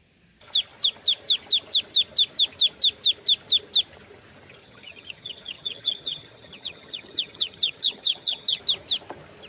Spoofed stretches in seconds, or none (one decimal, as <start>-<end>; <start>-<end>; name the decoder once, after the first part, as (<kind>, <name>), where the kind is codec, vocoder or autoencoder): 4.6-8.6 (vocoder, HiFi-GAN)